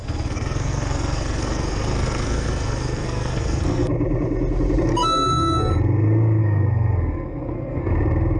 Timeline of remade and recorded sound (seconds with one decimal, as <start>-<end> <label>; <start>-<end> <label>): 0.0-3.9 remade; 3.9-4.9 recorded; 4.9-5.7 remade; 5.7-6.4 recorded; 6.4-7.9 remade; 7.9-8.4 recorded